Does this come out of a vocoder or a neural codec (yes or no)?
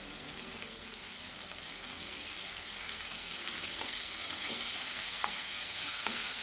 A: yes